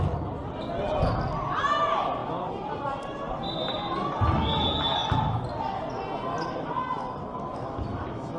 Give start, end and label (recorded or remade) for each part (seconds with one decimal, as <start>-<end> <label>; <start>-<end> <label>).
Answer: 0.0-7.3 recorded; 7.3-8.4 remade